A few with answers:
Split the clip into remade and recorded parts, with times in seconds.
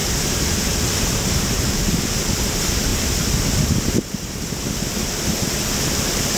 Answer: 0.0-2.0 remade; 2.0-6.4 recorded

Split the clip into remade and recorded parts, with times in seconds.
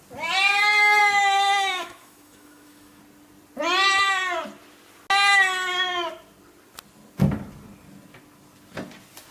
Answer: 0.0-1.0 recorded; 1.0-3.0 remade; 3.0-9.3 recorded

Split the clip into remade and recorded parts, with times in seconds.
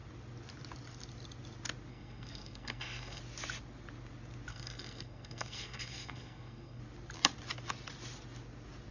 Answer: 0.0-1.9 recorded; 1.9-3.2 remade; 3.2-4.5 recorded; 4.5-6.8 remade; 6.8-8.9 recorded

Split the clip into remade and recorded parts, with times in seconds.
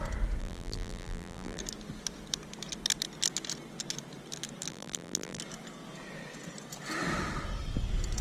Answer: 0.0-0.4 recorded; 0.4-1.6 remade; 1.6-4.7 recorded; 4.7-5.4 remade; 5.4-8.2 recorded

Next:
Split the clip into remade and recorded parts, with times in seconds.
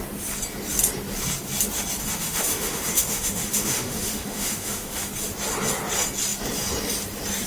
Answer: 0.0-2.0 recorded; 2.0-5.0 remade; 5.0-7.5 recorded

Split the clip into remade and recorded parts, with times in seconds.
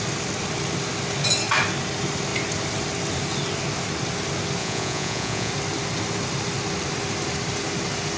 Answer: 0.0-4.6 recorded; 4.6-5.5 remade; 5.5-8.2 recorded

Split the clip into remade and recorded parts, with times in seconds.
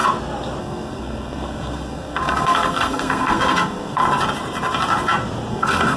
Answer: 0.0-0.6 recorded; 0.6-4.0 remade; 4.0-5.5 recorded; 5.5-6.0 remade